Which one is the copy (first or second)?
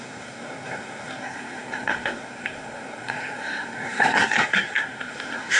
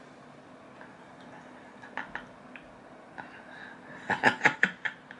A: first